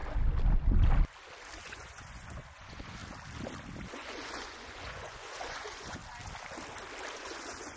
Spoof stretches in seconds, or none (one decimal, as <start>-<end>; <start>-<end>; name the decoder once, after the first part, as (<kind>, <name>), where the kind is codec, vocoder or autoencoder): 1.6-3.0 (vocoder, Vocos); 3.9-6.0; 7.1-7.8